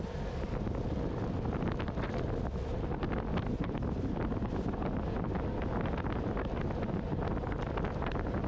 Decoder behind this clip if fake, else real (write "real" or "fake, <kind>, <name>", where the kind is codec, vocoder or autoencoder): real